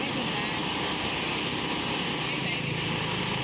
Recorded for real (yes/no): yes